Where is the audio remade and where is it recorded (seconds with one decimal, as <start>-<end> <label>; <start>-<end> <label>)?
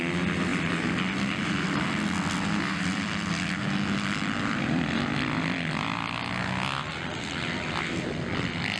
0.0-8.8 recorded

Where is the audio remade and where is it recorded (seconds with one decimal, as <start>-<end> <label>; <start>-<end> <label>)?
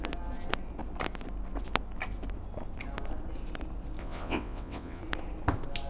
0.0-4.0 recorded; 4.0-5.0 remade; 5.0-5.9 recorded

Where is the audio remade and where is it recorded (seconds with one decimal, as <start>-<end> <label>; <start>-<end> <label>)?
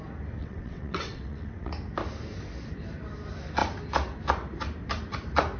0.0-0.4 recorded; 0.4-1.7 remade; 1.7-5.6 recorded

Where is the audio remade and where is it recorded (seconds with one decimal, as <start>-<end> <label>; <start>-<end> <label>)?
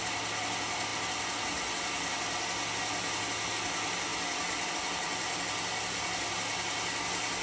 0.0-7.4 recorded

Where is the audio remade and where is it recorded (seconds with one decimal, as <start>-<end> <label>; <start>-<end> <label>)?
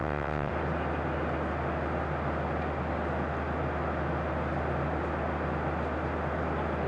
0.0-0.5 remade; 0.5-6.9 recorded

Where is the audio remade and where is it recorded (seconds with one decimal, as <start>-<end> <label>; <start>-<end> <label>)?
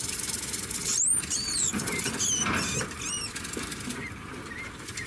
0.0-5.1 recorded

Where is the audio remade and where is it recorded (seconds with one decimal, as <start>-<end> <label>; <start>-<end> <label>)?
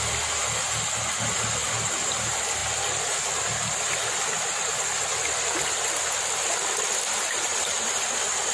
0.0-8.5 recorded